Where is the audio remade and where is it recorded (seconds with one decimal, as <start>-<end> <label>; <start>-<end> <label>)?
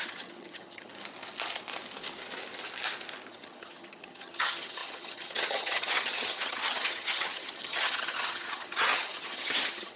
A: 0.0-0.9 remade; 0.9-3.3 recorded; 3.3-10.0 remade